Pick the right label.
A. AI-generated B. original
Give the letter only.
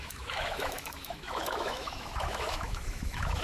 A